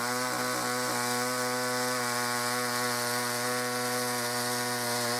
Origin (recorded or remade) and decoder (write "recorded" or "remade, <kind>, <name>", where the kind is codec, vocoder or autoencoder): recorded